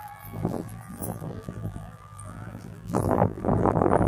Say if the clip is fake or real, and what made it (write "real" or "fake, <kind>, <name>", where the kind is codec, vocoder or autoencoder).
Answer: fake, vocoder, BigVGAN v2